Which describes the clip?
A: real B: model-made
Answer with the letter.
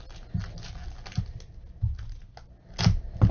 A